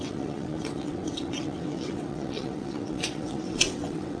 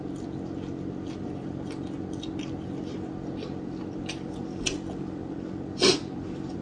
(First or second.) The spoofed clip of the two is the first